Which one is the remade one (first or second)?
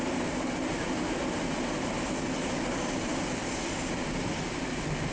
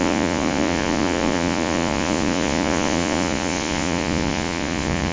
second